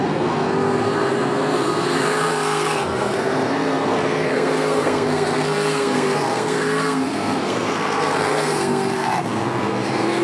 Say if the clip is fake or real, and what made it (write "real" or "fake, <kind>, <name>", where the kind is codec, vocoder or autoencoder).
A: fake, codec, SNAC